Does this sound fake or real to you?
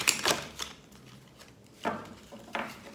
fake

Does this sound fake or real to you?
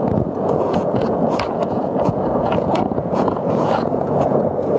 fake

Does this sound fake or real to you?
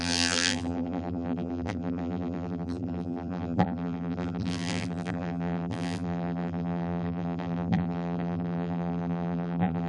fake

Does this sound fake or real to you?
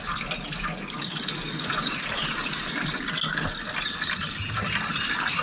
real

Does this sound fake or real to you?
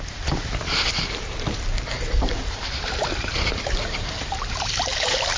fake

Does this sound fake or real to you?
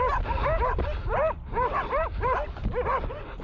real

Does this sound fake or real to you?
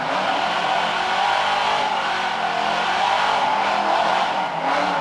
real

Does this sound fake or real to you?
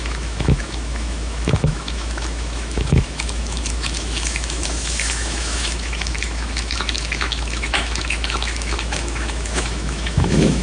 fake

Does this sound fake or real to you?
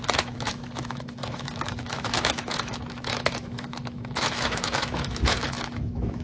fake